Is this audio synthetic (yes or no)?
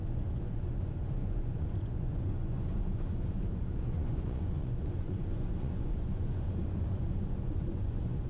yes